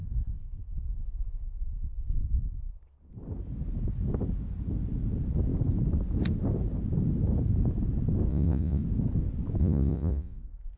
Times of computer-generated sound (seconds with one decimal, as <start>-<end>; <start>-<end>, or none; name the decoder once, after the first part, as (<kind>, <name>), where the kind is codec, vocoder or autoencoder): 8.3-8.8 (vocoder, Vocos); 9.6-10.4